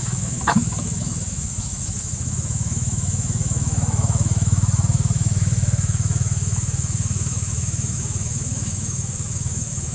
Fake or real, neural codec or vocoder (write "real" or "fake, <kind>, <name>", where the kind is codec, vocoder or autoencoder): fake, autoencoder, DAC-VAE